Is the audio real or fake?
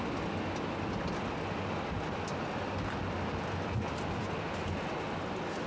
real